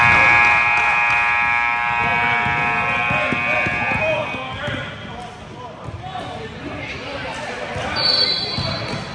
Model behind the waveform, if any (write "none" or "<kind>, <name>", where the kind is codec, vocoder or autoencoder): none